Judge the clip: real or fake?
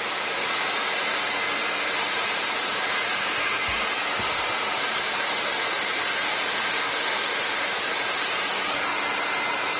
fake